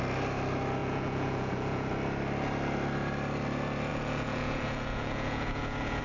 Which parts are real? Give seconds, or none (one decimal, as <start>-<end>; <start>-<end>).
0.0-0.8; 1.9-3.9

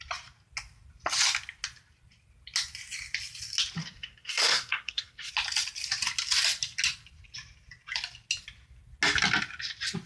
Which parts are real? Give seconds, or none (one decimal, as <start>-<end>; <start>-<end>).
0.0-3.8; 5.3-10.1

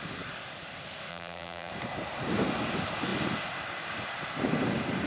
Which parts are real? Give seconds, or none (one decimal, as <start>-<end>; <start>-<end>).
0.0-1.1; 1.7-5.1

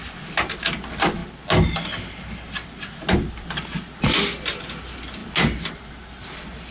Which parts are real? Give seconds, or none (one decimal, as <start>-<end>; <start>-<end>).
0.0-6.7